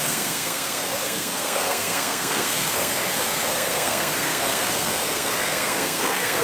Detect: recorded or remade remade